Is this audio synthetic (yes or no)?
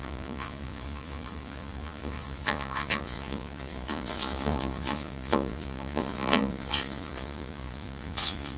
yes